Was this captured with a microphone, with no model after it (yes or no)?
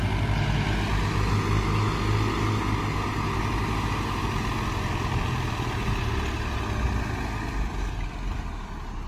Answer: yes